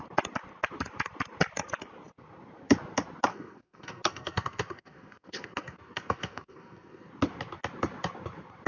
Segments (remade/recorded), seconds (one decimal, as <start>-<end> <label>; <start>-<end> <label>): 0.0-3.3 recorded; 3.3-7.1 remade; 7.1-8.7 recorded